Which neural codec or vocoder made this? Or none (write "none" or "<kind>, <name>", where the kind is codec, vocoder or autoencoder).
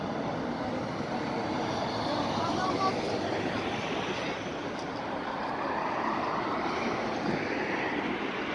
none